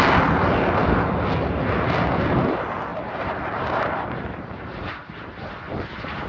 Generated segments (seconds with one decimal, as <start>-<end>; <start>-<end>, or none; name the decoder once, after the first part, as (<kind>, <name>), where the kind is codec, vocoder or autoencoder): 2.9-5.3 (vocoder, BigVGAN v2)